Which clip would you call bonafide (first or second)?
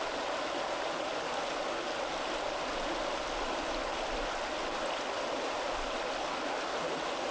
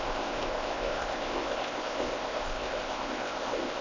first